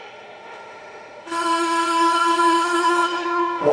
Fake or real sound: fake